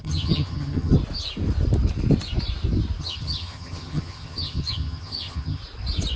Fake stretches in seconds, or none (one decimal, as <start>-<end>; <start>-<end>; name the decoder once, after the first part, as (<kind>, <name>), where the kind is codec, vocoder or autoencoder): 0.0-1.0 (vocoder, HiFi-GAN); 3.0-5.6